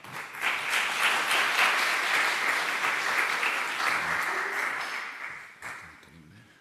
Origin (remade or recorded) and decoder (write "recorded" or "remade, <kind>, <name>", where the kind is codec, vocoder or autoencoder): recorded